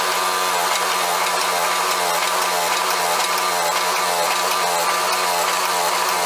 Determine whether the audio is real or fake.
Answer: real